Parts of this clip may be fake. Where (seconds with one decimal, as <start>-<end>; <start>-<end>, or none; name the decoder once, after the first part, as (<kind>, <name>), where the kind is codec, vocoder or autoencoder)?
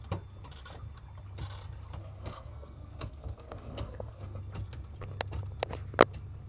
2.0-4.4 (codec, SNAC)